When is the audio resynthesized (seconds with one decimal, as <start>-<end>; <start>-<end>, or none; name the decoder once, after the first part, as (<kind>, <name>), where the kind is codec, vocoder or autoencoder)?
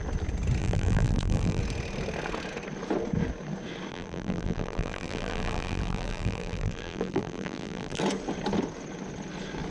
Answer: 0.6-1.6 (vocoder, BigVGAN v2); 3.9-8.0